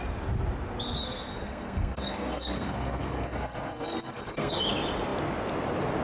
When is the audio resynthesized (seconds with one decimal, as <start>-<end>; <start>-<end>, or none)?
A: 1.0-4.6